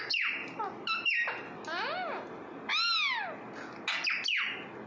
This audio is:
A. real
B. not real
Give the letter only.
A